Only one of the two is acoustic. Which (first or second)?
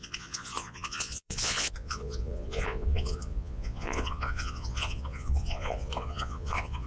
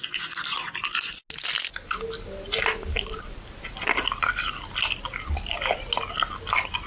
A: second